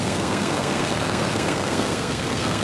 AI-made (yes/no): yes